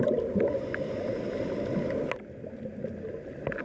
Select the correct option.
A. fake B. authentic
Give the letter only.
B